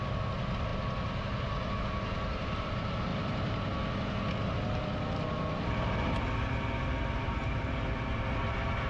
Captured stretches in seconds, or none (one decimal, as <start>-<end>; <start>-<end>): 0.0-8.9